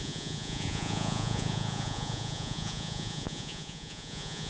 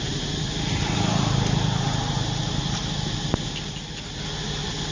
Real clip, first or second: second